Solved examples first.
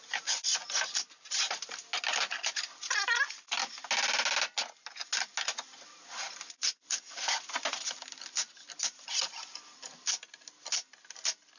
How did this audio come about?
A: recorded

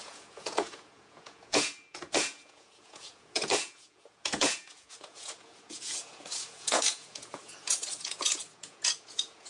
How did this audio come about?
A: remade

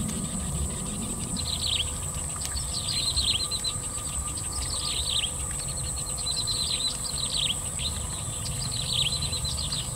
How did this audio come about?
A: recorded